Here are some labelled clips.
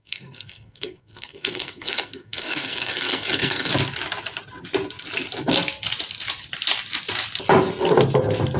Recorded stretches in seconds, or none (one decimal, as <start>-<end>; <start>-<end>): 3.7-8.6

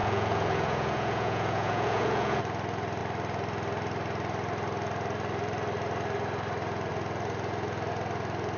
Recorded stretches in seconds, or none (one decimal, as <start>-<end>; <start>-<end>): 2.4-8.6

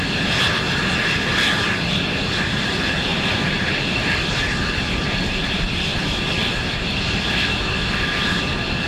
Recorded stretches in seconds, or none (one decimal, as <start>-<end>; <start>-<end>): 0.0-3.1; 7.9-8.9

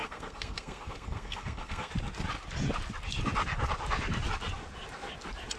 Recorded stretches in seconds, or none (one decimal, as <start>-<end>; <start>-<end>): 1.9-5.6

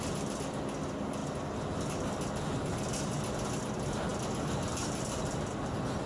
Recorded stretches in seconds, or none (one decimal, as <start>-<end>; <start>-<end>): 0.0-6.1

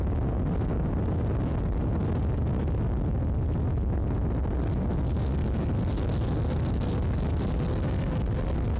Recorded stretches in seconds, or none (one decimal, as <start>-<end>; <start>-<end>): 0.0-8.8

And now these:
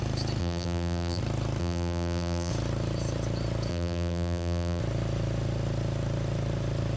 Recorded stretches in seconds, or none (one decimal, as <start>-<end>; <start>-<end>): 0.0-0.4; 1.2-1.6; 2.5-3.7; 4.8-7.0